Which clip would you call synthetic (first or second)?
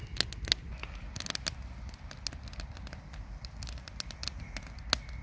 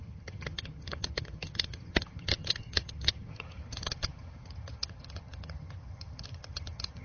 second